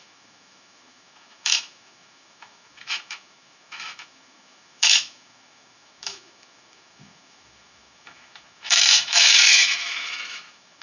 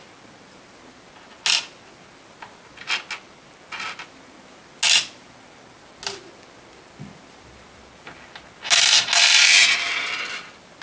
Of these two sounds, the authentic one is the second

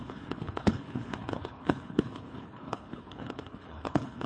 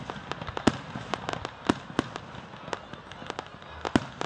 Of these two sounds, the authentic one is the second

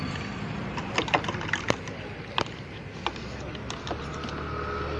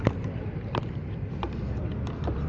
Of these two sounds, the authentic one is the first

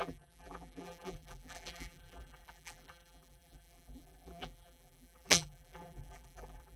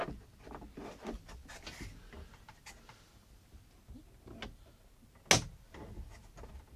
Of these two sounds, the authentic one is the second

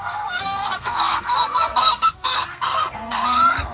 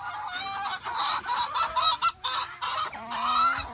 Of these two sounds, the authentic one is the second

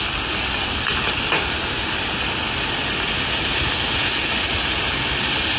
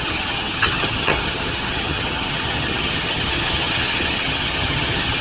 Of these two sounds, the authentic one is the first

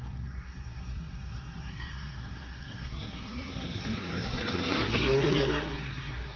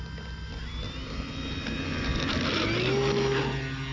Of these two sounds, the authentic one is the second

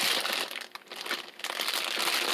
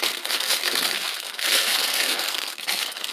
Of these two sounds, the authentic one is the first